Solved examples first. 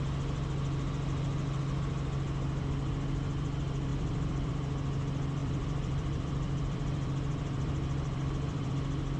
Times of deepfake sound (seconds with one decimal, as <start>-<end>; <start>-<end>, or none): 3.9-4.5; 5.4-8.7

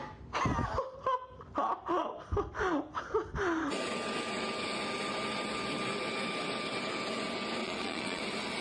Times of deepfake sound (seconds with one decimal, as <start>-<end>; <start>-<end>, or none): 7.6-8.2

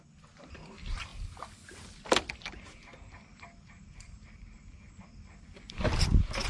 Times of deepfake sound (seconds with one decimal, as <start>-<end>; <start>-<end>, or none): none

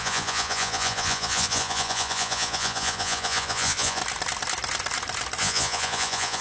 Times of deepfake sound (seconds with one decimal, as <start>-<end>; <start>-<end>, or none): 0.0-4.0; 5.4-6.4